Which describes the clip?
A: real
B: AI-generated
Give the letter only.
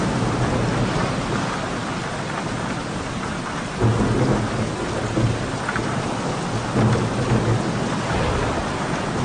A